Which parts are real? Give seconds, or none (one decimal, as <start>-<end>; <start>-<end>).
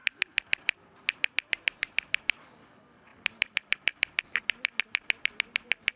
0.0-3.1; 4.2-6.0